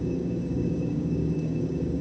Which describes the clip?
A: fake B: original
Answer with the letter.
A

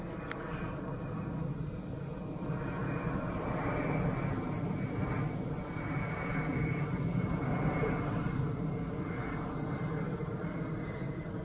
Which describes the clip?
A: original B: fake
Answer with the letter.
A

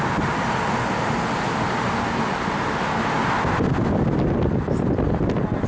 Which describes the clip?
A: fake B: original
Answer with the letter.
B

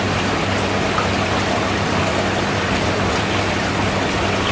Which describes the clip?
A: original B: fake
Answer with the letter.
A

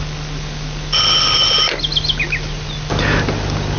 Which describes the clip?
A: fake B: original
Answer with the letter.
B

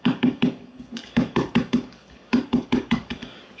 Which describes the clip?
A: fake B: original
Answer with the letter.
A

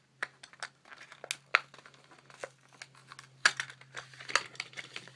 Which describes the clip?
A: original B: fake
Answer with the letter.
A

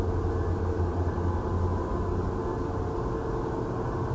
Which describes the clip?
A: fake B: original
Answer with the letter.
B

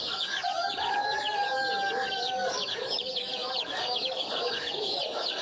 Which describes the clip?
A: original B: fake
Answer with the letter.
B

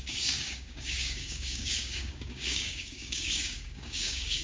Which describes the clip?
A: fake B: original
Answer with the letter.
A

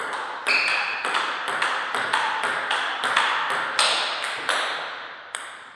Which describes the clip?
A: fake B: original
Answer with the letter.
B